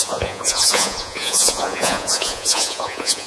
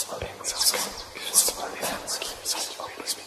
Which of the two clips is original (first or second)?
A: second